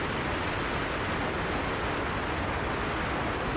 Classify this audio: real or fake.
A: real